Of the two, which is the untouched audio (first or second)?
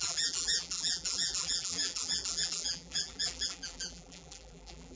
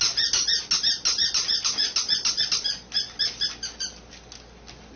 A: second